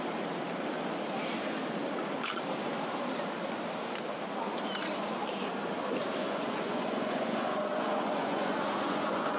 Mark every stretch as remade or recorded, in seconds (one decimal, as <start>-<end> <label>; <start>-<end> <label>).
0.0-6.2 recorded; 6.2-9.4 remade